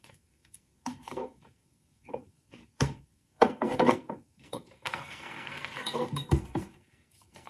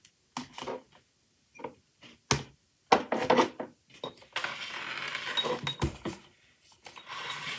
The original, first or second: second